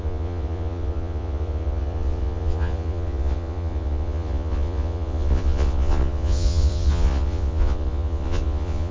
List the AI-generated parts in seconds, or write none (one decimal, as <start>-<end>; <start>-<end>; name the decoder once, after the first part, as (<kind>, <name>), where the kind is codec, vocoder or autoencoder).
0.0-8.9 (vocoder, Vocos)